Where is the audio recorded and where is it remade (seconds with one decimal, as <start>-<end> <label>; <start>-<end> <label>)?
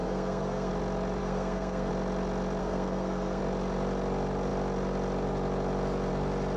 0.0-0.7 remade; 0.7-1.2 recorded; 1.2-1.9 remade; 1.9-2.6 recorded; 2.6-3.4 remade; 3.4-6.6 recorded